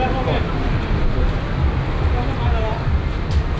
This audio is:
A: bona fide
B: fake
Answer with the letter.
A